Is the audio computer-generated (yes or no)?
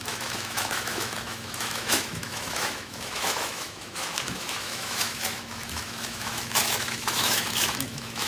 yes